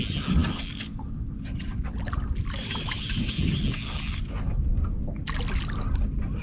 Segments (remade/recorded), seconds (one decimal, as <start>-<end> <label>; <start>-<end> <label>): 0.0-0.4 recorded; 0.4-3.3 remade; 3.3-6.4 recorded